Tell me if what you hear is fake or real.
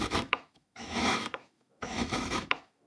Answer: fake